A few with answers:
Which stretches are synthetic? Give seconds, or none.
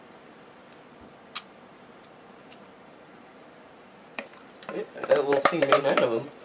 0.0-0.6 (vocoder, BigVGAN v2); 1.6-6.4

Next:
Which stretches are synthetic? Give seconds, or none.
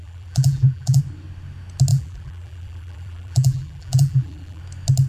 0.0-1.0 (vocoder, BigVGAN v2); 1.9-4.6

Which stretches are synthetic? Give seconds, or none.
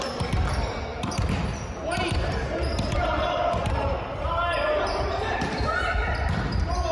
0.9-5.0 (vocoder, BigVGAN v2)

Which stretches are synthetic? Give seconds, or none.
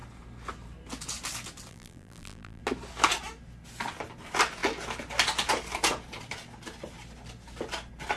1.7-2.6 (vocoder, BigVGAN v2)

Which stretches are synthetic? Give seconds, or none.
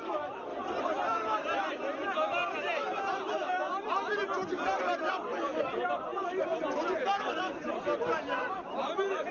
0.0-0.5 (vocoder, BigVGAN v2); 2.6-4.1; 5.1-6.1; 7.4-9.3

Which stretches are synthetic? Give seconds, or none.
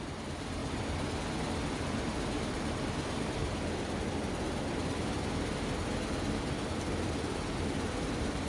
0.0-0.6 (vocoder, BigVGAN v2); 1.7-3.4; 7.1-8.5